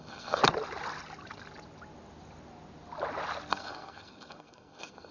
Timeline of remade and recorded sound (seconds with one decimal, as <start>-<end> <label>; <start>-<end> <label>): 0.0-0.4 remade; 0.4-3.5 recorded; 3.5-5.1 remade